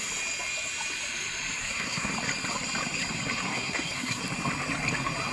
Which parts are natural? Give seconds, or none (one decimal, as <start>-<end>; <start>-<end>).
0.0-1.6; 2.1-3.5; 4.2-5.3